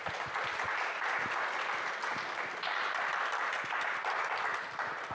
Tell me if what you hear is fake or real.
real